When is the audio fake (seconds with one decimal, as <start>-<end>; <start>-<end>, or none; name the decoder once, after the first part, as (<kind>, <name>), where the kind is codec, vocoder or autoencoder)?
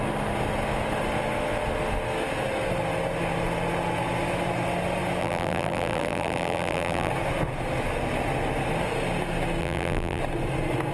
5.2-7.1 (vocoder, BigVGAN v2); 9.6-10.2